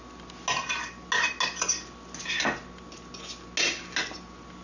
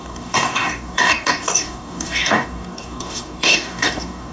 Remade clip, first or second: second